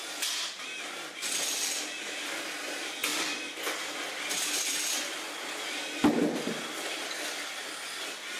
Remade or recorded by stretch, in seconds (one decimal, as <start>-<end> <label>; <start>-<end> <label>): 0.0-8.4 recorded

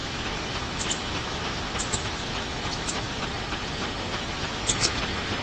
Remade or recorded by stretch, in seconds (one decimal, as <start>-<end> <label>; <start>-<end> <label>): 0.0-3.2 remade; 3.2-4.1 recorded; 4.1-5.0 remade; 5.0-5.4 recorded